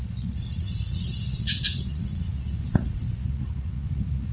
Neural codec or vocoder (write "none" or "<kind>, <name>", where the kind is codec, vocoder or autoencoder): vocoder, Vocos